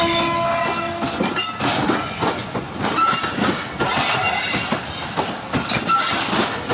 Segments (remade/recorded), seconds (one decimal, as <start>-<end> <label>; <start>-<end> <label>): 0.0-2.0 recorded; 2.0-2.7 remade; 2.7-6.7 recorded

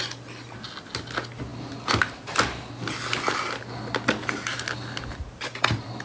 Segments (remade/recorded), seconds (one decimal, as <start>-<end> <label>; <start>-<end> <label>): 0.0-6.0 recorded

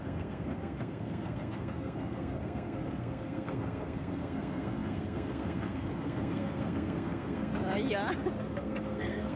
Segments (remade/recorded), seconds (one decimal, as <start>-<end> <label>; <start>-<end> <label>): 0.0-7.5 remade; 7.5-8.4 recorded; 8.4-9.4 remade

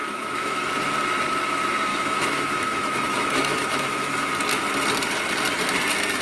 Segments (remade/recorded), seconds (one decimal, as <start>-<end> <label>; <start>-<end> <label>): 0.0-0.7 remade; 0.7-1.9 recorded; 1.9-4.3 remade; 4.3-6.2 recorded